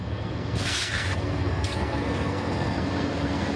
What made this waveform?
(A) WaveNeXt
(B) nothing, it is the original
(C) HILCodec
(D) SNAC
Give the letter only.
D